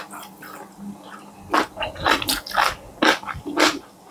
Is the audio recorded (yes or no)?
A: yes